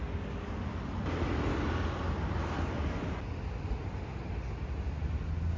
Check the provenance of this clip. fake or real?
real